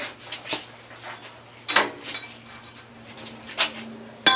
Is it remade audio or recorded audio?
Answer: recorded